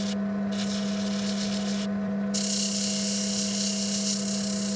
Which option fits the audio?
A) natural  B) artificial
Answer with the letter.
A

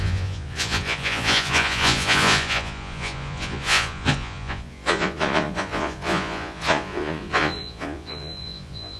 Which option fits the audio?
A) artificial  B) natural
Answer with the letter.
A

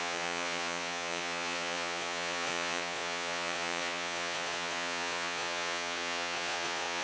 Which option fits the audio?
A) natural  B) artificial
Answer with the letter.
B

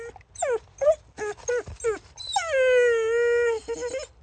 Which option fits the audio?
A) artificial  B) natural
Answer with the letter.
B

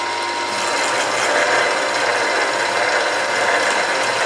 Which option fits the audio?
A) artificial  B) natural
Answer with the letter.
B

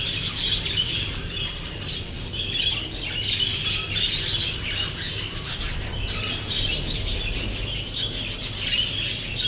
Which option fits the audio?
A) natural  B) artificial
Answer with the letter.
A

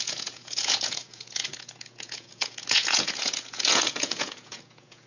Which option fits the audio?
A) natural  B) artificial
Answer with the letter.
B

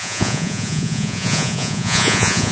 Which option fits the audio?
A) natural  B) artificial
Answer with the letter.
B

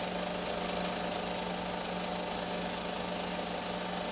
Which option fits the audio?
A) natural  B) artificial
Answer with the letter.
A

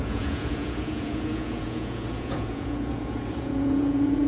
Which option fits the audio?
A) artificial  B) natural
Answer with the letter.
A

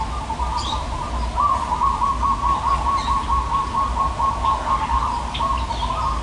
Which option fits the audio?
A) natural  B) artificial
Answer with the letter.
A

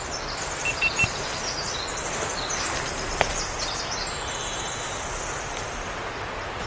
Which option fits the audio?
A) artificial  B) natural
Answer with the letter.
B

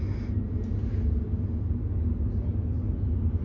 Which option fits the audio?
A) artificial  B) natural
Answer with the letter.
B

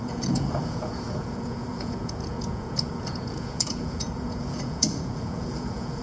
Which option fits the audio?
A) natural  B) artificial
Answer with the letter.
B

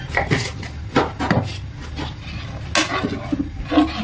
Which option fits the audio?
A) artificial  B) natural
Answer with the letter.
B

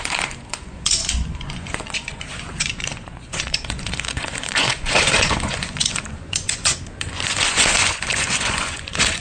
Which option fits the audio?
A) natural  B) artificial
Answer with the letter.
B